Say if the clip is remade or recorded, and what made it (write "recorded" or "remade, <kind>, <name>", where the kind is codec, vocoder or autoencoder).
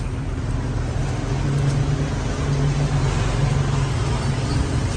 recorded